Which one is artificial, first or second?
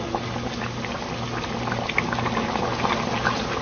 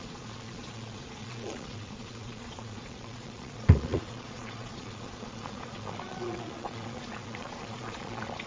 second